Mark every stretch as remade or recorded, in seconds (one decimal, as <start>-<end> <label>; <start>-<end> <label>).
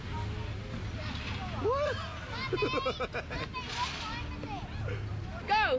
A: 0.0-5.8 recorded